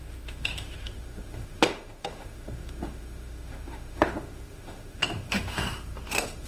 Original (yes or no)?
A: no